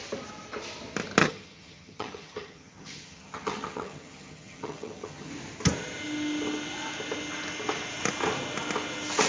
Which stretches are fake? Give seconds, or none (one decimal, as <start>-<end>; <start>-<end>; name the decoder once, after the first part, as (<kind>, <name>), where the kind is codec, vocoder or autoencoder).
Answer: 1.2-5.3 (vocoder, HiFi-GAN)